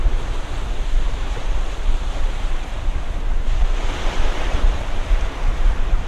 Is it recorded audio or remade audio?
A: remade